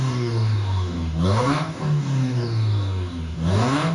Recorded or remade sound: remade